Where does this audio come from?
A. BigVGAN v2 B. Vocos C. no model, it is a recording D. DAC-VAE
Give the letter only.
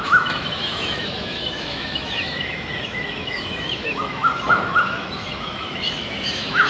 D